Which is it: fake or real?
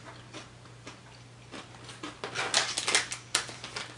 real